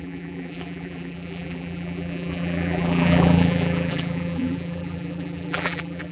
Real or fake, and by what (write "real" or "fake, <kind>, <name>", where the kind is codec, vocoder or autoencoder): fake, vocoder, BigVGAN v2